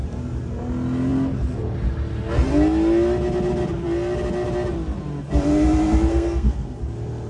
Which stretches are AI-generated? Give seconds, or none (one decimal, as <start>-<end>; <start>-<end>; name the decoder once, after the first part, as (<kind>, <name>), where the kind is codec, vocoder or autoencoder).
6.1-6.8 (codec, SNAC)